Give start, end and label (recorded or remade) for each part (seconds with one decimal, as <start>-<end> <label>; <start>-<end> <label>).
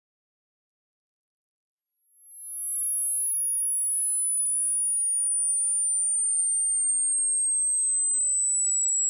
0.0-9.1 recorded